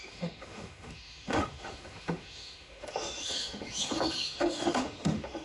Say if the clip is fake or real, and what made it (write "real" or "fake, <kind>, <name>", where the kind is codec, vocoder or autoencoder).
fake, autoencoder, DAC-VAE